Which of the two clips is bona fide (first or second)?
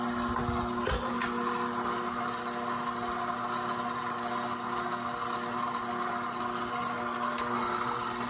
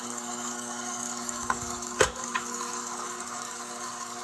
first